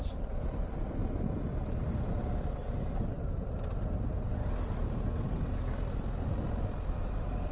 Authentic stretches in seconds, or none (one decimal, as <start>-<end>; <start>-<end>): 1.0-5.5